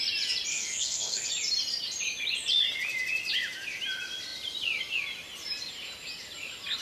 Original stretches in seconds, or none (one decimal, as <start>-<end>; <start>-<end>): 0.0-0.5; 1.3-6.8